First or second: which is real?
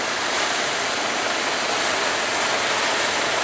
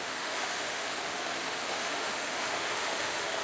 first